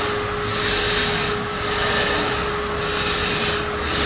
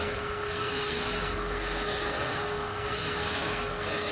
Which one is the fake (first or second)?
second